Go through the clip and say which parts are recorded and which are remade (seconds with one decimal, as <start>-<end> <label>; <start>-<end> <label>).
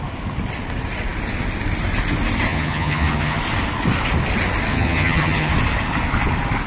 0.0-2.5 recorded; 2.5-3.4 remade; 3.4-4.7 recorded; 4.7-5.5 remade; 5.5-6.7 recorded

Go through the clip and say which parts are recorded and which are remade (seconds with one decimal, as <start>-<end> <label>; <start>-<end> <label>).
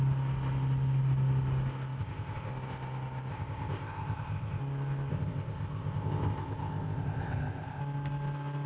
0.0-2.0 recorded; 2.0-2.5 remade; 2.5-3.3 recorded; 3.3-4.6 remade; 4.6-5.1 recorded; 5.1-7.8 remade; 7.8-8.7 recorded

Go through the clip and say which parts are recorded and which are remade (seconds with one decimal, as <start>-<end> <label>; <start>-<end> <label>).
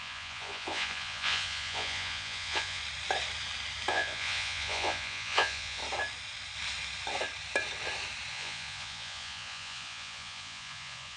0.0-2.8 remade; 2.8-3.9 recorded; 3.9-5.8 remade; 5.8-8.3 recorded; 8.3-11.2 remade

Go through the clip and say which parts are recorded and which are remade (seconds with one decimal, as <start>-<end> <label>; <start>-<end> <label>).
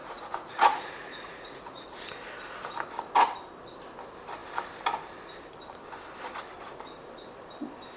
0.0-1.8 remade; 1.8-8.0 recorded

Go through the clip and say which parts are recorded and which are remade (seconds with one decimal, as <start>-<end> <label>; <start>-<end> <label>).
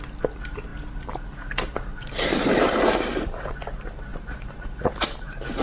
0.0-0.7 recorded; 0.7-3.5 remade; 3.5-4.1 recorded; 4.1-5.6 remade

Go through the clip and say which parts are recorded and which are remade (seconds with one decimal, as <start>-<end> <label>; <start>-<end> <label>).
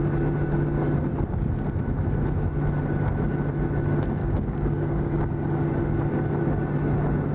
0.0-4.2 recorded; 4.2-5.7 remade; 5.7-7.3 recorded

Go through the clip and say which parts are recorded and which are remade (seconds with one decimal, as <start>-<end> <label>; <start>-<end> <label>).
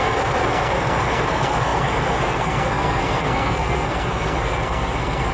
0.0-5.3 remade